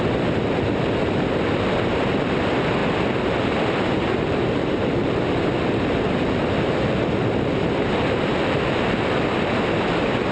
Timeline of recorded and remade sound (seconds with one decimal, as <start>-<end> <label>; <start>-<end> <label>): 0.0-10.3 recorded